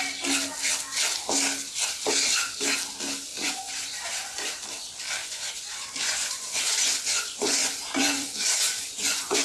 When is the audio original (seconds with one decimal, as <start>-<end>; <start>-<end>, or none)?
0.0-3.3; 4.6-5.2